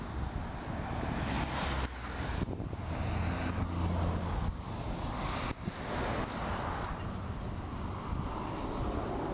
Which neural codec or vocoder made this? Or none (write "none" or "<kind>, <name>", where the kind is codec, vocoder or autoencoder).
none